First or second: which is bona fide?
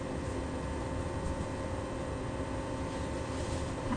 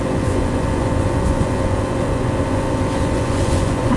first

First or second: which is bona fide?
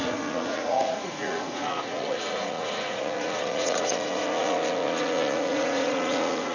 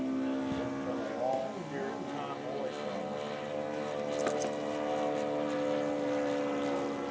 second